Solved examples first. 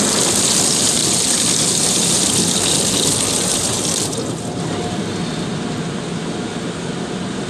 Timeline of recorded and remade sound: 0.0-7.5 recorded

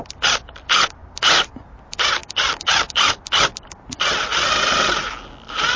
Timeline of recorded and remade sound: 0.0-5.8 recorded

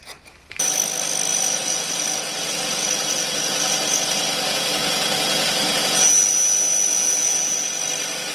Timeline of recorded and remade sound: 0.0-1.3 recorded; 1.3-6.1 remade; 6.1-6.9 recorded; 6.9-7.7 remade; 7.7-8.3 recorded

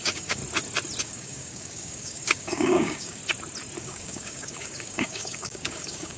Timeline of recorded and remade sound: 0.0-0.4 remade; 0.4-1.0 recorded; 1.0-3.2 remade; 3.2-3.8 recorded; 3.8-6.2 remade

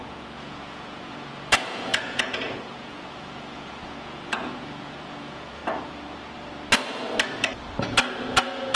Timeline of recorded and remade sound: 0.0-5.6 remade; 5.6-8.2 recorded; 8.2-8.8 remade